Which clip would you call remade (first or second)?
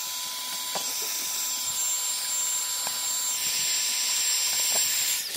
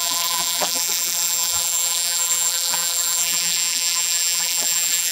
second